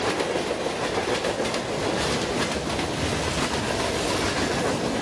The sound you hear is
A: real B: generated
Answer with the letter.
A